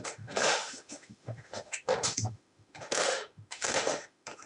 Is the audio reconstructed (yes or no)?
yes